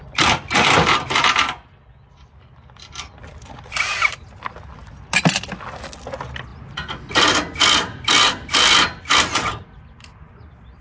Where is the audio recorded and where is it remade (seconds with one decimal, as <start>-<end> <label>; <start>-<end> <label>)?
0.0-10.8 recorded